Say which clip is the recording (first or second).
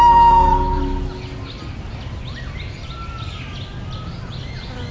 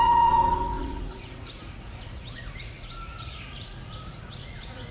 first